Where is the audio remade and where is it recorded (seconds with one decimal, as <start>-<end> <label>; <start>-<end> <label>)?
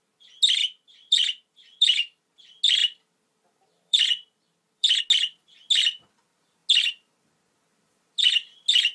0.0-0.6 recorded; 0.6-2.2 remade; 2.2-2.8 recorded; 2.8-5.0 remade; 5.0-8.9 recorded